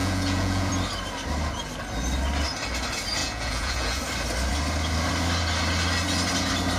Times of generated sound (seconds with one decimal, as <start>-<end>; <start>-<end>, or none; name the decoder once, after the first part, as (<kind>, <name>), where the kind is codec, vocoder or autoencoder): 0.0-0.7 (vocoder, Vocos); 3.2-4.0